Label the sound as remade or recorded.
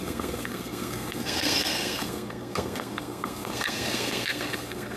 remade